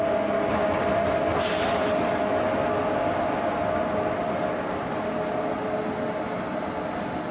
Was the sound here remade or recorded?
recorded